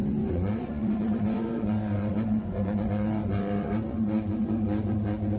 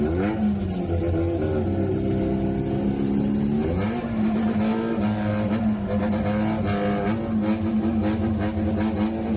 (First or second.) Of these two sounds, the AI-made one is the first